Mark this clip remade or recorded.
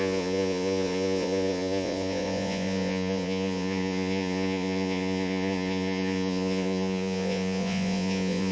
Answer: remade